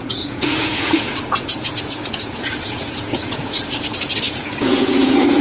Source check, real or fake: fake